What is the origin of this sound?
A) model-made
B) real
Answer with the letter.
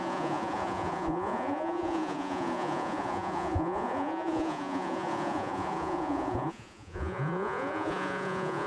A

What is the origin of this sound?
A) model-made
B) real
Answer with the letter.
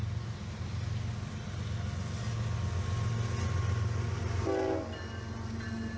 B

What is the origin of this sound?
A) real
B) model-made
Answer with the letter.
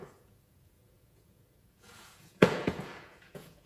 B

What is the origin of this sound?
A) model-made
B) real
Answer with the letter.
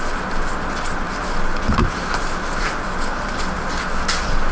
B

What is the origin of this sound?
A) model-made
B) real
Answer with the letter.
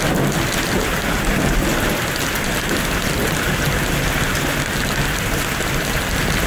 B